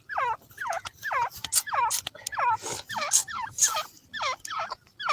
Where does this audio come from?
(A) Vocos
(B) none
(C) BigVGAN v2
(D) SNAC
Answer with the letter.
B